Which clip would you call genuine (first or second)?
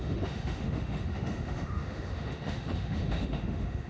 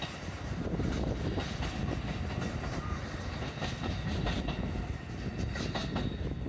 second